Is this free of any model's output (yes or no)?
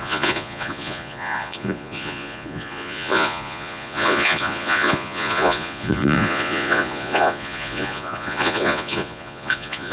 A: no